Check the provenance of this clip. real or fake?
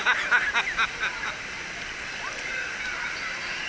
real